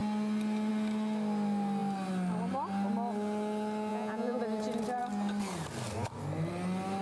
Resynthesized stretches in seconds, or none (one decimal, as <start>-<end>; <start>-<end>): 3.9-4.4